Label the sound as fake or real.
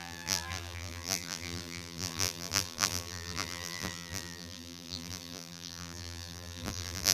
fake